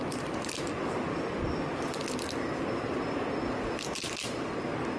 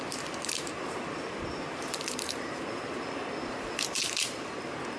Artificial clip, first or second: second